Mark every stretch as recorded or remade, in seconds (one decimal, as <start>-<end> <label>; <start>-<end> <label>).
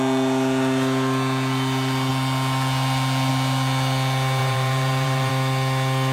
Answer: 0.0-4.4 recorded; 4.4-5.3 remade; 5.3-6.1 recorded